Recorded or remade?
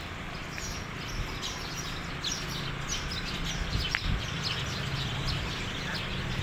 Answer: recorded